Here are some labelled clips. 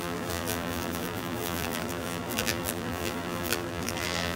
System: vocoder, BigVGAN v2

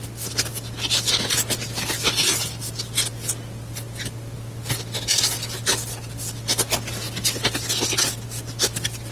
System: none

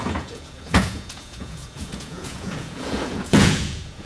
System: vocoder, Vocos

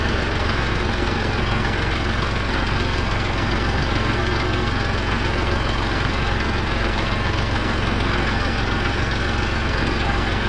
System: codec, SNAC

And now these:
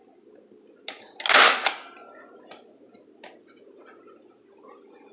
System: none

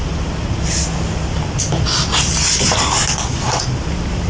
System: none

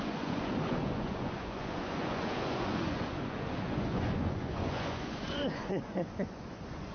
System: vocoder, Vocos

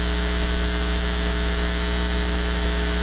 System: autoencoder, DAC-VAE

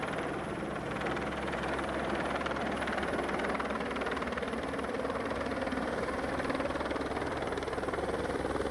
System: vocoder, BigVGAN v2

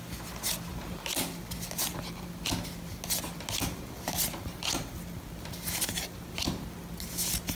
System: none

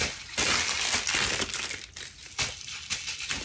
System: none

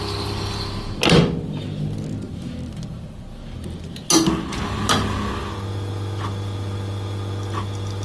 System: none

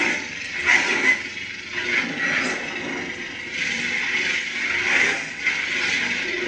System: vocoder, BigVGAN v2